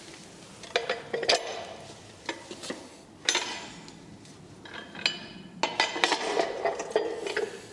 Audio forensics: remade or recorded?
recorded